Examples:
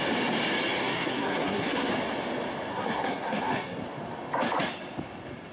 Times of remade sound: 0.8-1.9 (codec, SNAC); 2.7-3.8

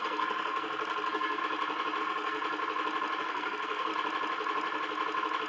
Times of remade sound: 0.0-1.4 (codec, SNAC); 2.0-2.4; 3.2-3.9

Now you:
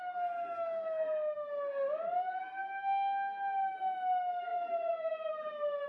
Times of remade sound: 4.5-5.3 (vocoder, Vocos)

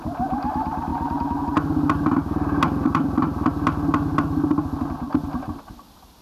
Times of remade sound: none

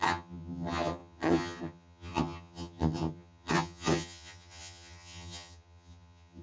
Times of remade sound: 0.0-6.4 (vocoder, HiFi-GAN)